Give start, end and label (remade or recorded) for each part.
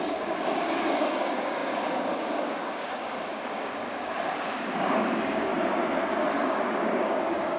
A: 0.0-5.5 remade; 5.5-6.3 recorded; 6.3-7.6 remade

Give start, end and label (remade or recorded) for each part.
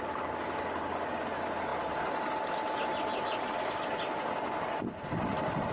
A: 0.0-5.7 recorded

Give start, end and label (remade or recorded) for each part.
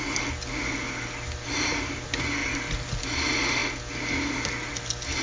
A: 0.0-5.2 recorded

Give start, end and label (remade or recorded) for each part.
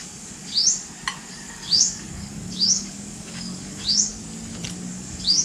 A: 0.0-0.6 remade; 0.6-1.3 recorded; 1.3-4.1 remade; 4.1-4.9 recorded; 4.9-5.4 remade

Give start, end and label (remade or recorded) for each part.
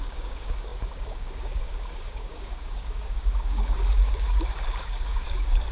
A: 0.0-5.7 remade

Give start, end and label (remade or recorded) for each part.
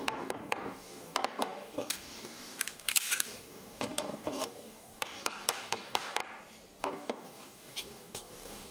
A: 0.0-6.2 remade; 6.2-6.8 recorded; 6.8-8.7 remade